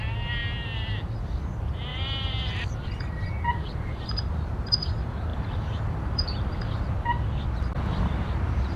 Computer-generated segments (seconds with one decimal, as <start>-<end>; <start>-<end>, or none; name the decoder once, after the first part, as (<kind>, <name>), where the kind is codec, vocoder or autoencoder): 1.9-4.2 (vocoder, BigVGAN v2); 5.3-8.3